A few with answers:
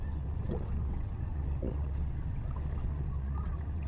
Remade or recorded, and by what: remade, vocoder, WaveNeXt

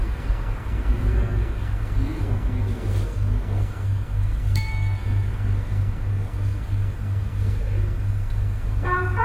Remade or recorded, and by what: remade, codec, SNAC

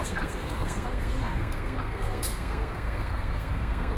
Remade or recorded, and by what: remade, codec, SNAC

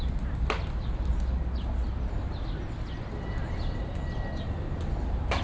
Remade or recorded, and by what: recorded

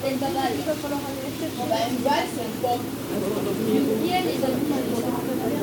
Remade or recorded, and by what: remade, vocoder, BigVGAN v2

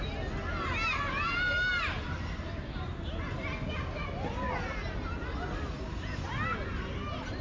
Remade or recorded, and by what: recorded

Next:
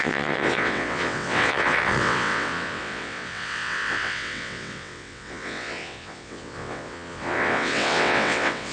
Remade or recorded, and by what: remade, vocoder, WaveNeXt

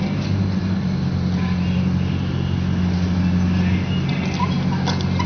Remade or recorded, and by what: recorded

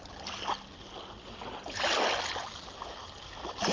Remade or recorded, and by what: recorded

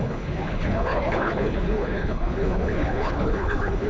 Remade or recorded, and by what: remade, codec, HILCodec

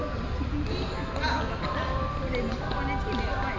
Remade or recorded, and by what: recorded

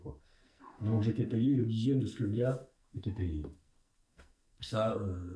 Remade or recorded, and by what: remade, codec, SNAC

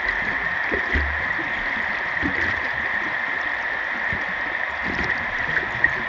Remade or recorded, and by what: recorded